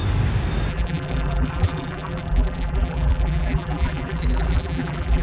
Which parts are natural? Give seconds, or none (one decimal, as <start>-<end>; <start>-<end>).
0.0-0.7